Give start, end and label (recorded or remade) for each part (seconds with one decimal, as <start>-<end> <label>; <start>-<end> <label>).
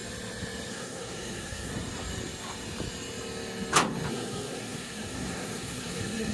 0.0-0.7 recorded; 0.7-1.7 remade; 1.7-4.1 recorded; 4.1-6.3 remade